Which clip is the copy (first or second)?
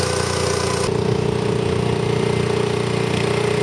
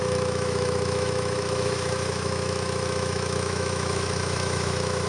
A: second